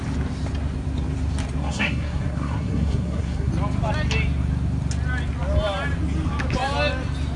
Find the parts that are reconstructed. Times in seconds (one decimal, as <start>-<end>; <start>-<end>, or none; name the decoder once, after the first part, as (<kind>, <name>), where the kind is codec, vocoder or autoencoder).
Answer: 1.6-3.5 (codec, SNAC)